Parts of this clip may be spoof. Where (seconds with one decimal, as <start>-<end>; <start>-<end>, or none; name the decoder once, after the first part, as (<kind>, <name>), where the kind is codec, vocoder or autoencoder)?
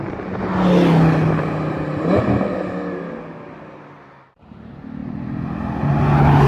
none